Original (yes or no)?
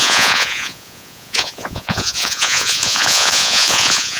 no